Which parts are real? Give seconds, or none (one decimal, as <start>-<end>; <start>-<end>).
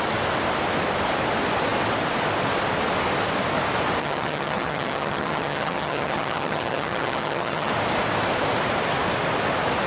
0.0-4.0; 7.7-9.9